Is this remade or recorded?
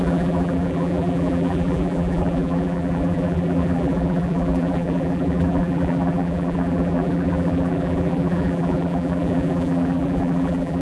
remade